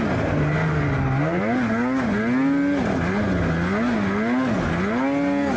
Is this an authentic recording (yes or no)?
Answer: yes